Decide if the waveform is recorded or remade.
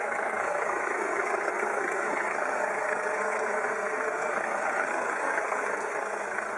remade